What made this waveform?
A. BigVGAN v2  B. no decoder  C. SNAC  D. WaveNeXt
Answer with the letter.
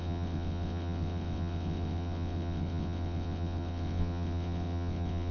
D